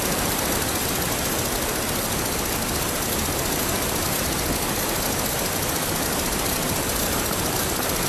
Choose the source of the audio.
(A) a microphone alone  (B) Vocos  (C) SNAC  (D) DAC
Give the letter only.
A